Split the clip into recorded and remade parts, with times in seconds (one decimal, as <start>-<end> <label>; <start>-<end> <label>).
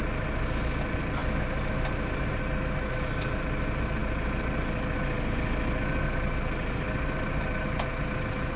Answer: 0.0-8.6 recorded